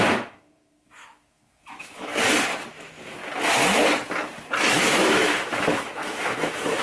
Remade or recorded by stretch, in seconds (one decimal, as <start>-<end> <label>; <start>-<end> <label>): 0.0-2.1 remade; 2.1-2.7 recorded; 2.7-3.2 remade; 3.2-4.8 recorded; 4.8-6.8 remade